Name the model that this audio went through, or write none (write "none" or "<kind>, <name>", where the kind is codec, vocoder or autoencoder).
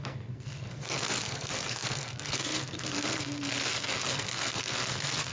codec, SNAC